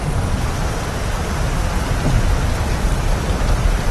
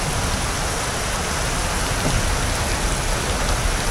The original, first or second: second